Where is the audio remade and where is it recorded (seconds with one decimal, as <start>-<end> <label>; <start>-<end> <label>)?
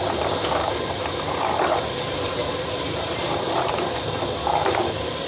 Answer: 0.0-0.6 recorded; 0.6-3.7 remade; 3.7-4.6 recorded; 4.6-5.3 remade